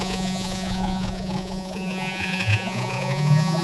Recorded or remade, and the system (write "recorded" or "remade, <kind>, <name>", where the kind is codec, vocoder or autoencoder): remade, vocoder, Vocos